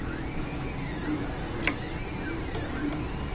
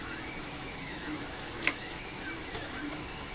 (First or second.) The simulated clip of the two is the second